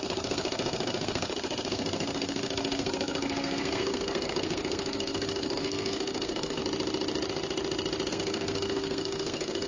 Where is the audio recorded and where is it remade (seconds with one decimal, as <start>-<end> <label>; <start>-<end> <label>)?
0.0-6.6 remade; 6.6-8.1 recorded; 8.1-9.7 remade